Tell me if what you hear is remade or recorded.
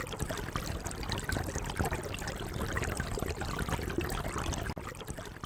recorded